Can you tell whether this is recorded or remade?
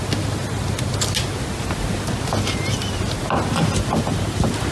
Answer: recorded